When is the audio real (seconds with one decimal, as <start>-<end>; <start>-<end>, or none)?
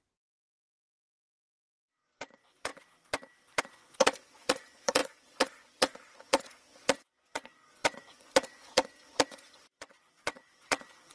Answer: 2.7-3.6